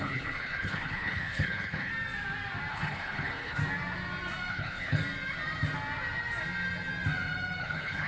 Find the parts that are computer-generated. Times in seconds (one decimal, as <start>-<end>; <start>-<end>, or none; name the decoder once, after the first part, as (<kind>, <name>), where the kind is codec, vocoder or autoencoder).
0.0-1.9 (codec, HILCodec); 2.7-3.6; 4.5-5.0; 7.6-8.1